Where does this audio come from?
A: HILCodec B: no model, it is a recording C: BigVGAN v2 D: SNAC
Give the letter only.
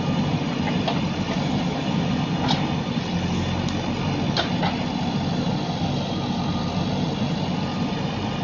B